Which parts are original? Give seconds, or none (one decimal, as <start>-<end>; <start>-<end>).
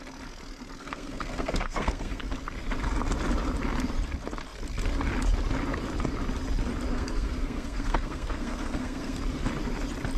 0.0-0.8; 2.2-6.9; 9.2-10.2